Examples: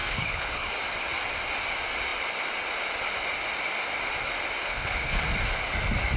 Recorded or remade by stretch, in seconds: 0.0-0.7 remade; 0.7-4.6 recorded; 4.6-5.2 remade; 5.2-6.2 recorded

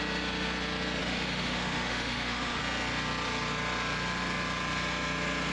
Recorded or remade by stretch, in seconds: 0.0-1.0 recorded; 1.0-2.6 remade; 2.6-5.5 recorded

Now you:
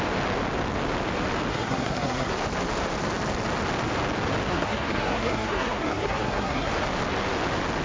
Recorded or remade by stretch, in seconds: 0.0-1.5 recorded; 1.5-2.3 remade; 2.3-4.5 recorded; 4.5-6.7 remade; 6.7-7.8 recorded

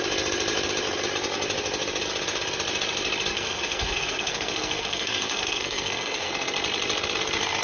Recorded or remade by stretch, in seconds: 0.0-3.3 recorded; 3.3-6.3 remade; 6.3-7.6 recorded